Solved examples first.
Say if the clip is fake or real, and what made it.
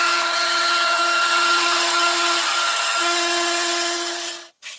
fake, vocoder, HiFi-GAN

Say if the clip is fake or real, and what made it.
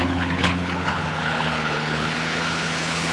fake, codec, HILCodec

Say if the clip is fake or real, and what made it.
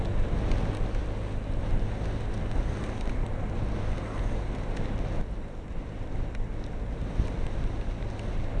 real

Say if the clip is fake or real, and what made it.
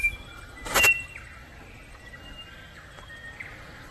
real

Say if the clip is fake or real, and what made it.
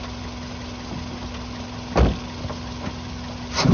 real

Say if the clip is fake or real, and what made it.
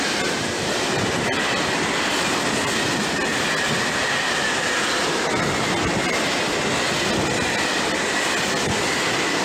real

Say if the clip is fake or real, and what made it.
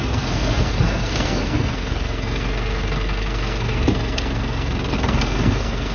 fake, codec, SNAC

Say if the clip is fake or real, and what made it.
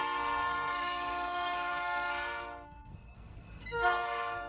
fake, codec, SNAC